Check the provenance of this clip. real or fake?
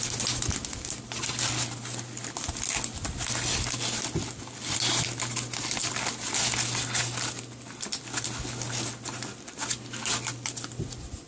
real